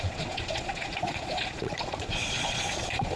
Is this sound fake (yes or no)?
yes